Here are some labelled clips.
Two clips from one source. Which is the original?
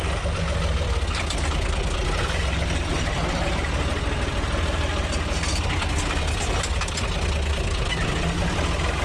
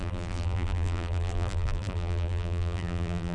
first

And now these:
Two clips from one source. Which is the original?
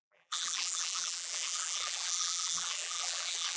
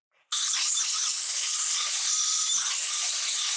second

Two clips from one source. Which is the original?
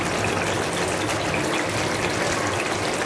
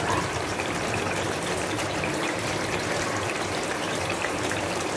first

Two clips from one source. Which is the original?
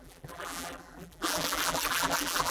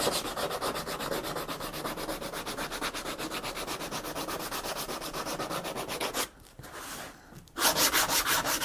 second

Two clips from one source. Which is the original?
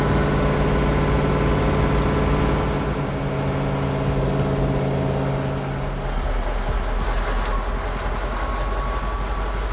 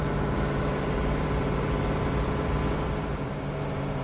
first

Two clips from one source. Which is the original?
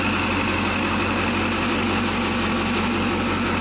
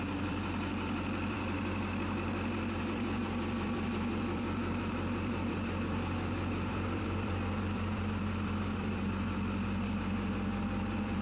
first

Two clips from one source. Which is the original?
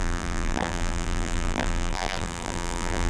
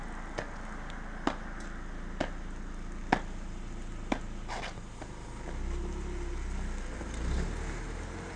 second